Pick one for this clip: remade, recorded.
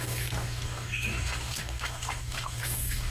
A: remade